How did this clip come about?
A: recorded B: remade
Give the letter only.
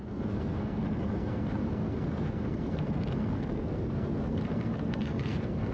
B